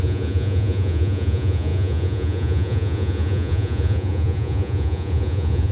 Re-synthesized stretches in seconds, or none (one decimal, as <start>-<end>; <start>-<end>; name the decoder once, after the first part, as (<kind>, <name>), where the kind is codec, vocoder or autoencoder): 0.0-5.7 (vocoder, Vocos)